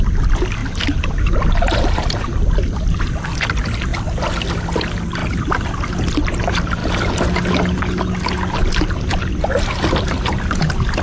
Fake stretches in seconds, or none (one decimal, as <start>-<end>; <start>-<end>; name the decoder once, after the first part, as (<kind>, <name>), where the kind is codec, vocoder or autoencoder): none